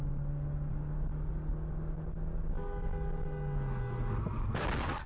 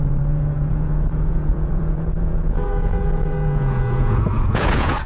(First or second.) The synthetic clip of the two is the second